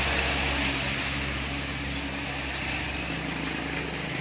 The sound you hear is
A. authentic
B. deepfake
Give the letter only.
A